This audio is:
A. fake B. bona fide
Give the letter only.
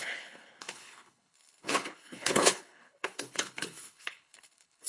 A